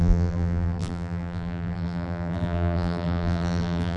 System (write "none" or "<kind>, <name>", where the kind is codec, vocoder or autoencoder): vocoder, BigVGAN v2